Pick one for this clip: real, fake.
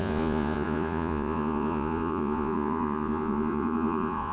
fake